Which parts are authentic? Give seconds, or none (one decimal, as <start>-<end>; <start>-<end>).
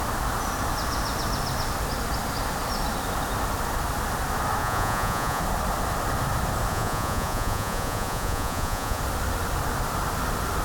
0.0-4.6; 5.4-6.7; 9.0-10.6